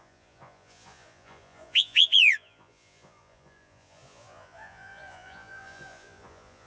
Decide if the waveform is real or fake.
fake